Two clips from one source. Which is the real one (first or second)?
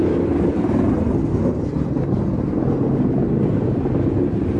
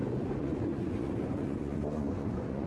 first